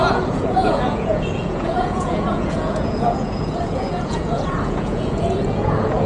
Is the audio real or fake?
fake